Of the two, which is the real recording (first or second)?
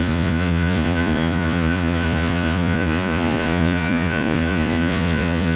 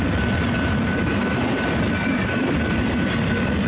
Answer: second